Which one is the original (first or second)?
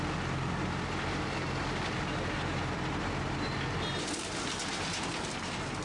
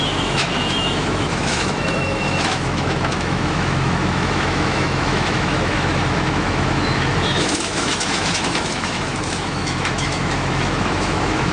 first